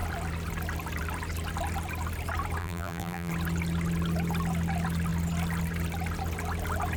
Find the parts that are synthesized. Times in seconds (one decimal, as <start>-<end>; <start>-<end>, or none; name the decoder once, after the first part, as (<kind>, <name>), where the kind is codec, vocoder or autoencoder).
2.6-3.3 (vocoder, BigVGAN v2)